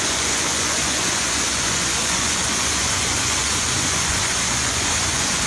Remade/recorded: remade